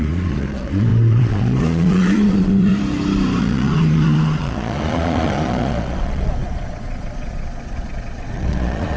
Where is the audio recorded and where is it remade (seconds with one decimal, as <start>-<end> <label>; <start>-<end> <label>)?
0.0-2.7 remade; 2.7-3.4 recorded; 3.4-9.0 remade